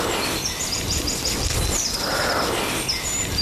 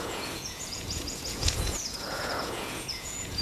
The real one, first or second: first